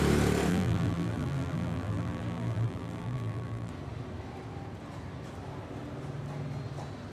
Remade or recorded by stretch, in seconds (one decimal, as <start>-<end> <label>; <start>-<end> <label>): 0.0-0.5 recorded; 0.5-3.7 remade; 3.7-7.1 recorded